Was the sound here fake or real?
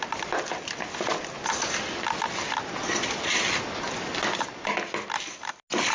real